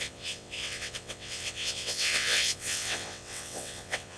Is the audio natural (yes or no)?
no